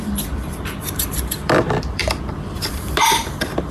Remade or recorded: remade